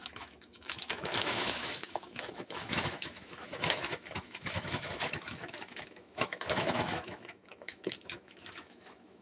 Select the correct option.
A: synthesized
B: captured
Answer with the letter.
A